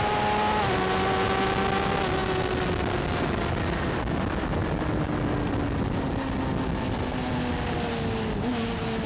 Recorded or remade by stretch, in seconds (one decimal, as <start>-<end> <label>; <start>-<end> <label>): 0.0-9.1 recorded